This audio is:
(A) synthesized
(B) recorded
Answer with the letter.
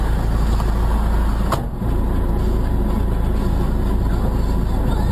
B